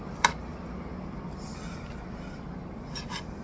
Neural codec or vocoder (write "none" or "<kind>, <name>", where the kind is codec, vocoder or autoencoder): none